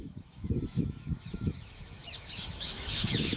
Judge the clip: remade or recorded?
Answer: remade